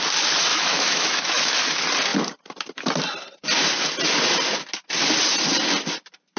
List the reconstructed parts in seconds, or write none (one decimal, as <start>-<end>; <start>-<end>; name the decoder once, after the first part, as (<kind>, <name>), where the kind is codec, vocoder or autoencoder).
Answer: 0.5-1.6 (autoencoder, DAC-VAE)